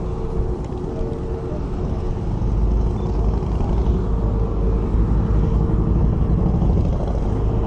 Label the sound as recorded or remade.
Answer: recorded